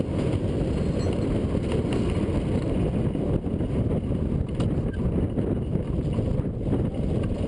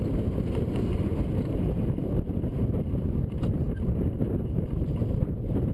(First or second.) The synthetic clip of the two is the second